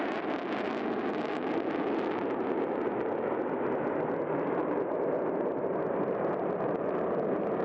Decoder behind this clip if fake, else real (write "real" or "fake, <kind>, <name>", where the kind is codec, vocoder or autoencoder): real